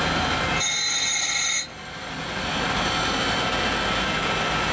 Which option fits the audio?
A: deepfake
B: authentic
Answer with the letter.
B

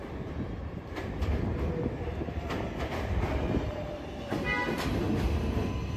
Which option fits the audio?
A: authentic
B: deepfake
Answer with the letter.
A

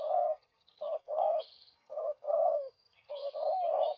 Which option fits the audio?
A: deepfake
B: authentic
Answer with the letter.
A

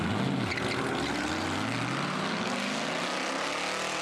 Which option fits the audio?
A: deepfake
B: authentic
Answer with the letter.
B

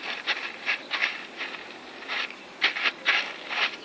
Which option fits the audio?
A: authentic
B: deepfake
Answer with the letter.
B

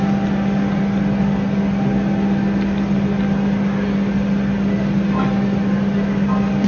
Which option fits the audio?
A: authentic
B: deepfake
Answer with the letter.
A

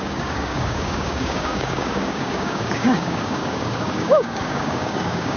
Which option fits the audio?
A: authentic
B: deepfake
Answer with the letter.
B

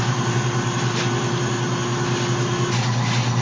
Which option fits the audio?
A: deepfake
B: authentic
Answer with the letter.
B